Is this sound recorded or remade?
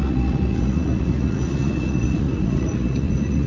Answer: remade